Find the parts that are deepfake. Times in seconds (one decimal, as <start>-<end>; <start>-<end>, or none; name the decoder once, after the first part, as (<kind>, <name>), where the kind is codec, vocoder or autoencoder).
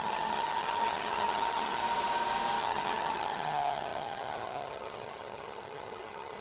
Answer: 0.0-1.8 (vocoder, HiFi-GAN); 2.6-6.4